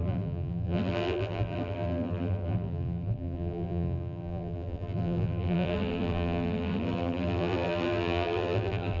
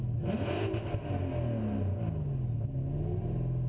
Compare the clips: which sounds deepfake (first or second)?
first